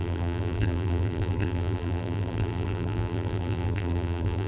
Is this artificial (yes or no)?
yes